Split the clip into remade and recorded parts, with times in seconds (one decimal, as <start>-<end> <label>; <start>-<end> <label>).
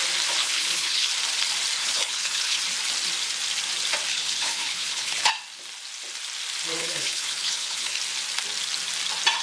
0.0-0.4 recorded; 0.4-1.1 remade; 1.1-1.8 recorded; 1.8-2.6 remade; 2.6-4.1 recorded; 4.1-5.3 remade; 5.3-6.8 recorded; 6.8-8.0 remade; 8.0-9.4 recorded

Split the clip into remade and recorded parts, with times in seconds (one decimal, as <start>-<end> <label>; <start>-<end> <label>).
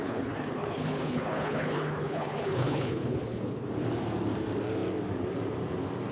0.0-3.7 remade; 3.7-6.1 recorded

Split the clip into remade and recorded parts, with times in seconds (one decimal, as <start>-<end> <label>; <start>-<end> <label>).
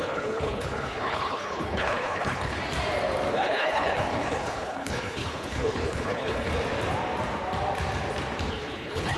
0.0-2.6 remade; 2.6-3.3 recorded; 3.3-6.5 remade; 6.5-8.5 recorded; 8.5-9.2 remade